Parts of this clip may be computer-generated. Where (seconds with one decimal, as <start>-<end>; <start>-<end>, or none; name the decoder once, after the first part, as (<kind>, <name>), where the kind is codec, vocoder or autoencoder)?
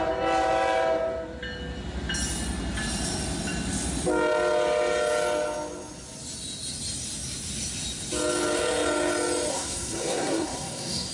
9.5-11.1 (codec, SNAC)